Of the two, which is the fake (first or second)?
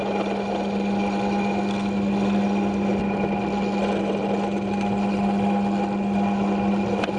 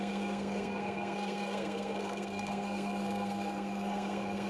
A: second